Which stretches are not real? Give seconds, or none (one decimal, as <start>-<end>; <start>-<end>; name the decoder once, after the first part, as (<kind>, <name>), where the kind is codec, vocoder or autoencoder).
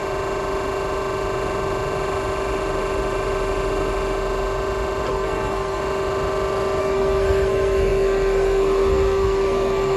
5.1-5.8 (codec, SNAC); 6.8-10.0